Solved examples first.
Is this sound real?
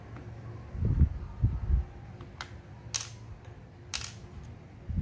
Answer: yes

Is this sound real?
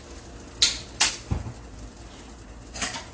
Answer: yes